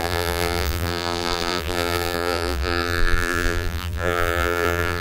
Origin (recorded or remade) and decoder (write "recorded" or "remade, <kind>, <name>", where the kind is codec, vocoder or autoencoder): remade, vocoder, BigVGAN v2